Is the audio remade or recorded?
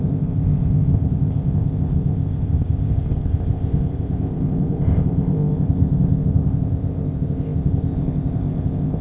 remade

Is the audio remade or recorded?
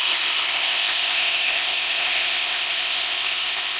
remade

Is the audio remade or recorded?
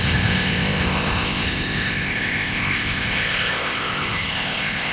remade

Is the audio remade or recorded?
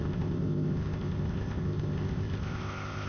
remade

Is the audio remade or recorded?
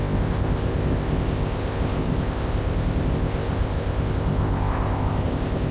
remade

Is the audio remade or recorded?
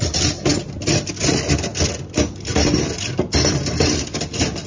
recorded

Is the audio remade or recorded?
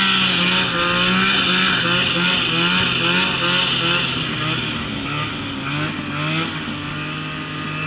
recorded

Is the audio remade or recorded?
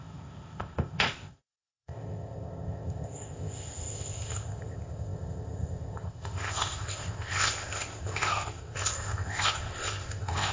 remade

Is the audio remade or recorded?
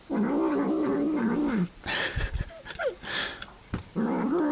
recorded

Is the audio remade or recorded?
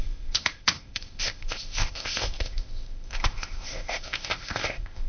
remade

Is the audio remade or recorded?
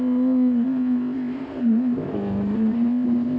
remade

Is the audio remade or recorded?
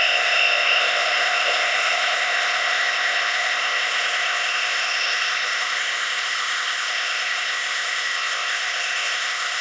remade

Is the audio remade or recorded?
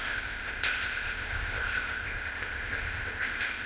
remade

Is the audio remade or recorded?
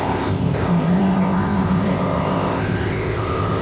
remade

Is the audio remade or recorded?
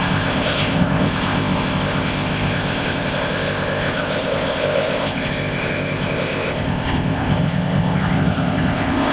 remade